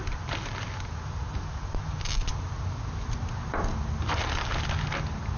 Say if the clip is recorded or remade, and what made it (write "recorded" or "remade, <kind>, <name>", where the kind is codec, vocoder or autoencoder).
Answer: recorded